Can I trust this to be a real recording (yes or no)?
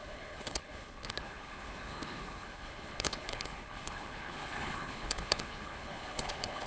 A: no